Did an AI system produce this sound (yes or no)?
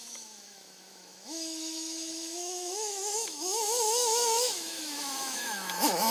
yes